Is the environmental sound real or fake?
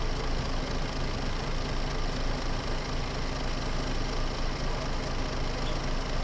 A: real